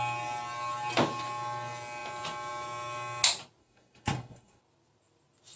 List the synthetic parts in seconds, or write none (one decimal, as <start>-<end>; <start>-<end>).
3.6-4.6